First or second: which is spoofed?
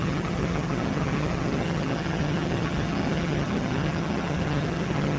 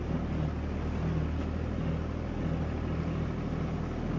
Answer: first